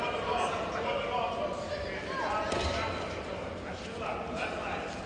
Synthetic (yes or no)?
no